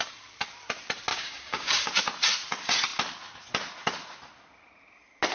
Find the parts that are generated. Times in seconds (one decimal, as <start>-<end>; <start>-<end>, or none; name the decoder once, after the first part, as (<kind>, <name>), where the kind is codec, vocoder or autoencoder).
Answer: 1.1-1.9 (codec, DAC)